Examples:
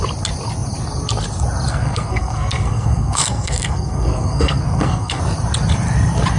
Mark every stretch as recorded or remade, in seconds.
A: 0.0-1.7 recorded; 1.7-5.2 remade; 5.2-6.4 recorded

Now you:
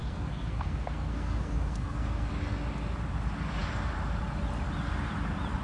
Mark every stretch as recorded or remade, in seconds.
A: 0.0-2.3 remade; 2.3-5.6 recorded